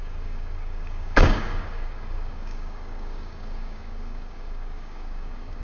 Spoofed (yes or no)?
yes